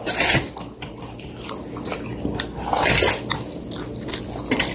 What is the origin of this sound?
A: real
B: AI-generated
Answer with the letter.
A